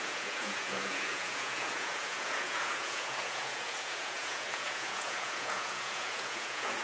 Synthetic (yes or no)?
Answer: yes